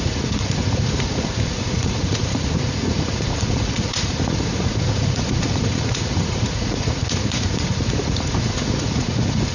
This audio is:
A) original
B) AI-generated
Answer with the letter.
B